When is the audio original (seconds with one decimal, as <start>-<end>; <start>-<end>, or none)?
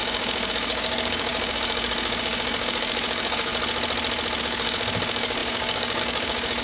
3.5-4.4